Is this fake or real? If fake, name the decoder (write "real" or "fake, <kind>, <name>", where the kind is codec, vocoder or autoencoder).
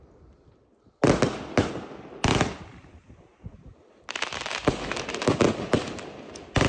real